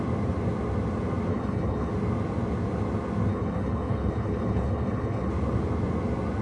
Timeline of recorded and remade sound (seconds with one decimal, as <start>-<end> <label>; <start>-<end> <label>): 0.0-1.3 recorded; 1.3-1.9 remade; 1.9-3.3 recorded; 3.3-5.3 remade; 5.3-6.4 recorded